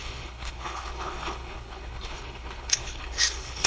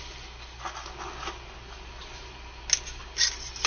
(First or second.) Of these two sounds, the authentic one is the second